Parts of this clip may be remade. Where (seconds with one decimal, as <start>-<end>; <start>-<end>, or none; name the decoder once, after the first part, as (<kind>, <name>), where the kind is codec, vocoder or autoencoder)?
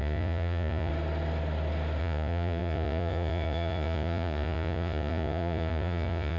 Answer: 0.0-0.9 (vocoder, Vocos); 2.0-6.4